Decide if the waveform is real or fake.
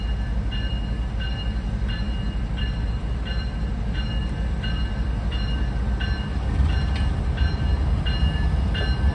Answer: real